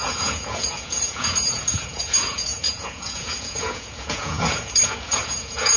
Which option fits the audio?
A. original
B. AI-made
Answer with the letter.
B